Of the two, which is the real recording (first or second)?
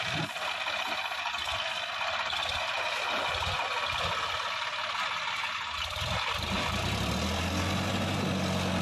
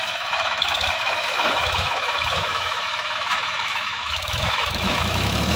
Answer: first